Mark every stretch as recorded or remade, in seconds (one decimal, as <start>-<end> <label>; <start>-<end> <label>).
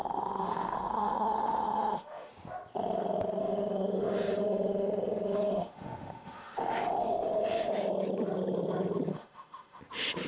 0.0-2.3 remade; 2.3-3.4 recorded; 3.4-7.7 remade; 7.7-9.1 recorded; 9.1-9.8 remade; 9.8-10.3 recorded